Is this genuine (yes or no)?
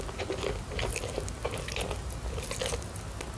yes